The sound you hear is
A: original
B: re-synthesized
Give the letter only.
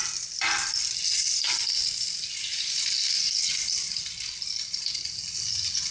A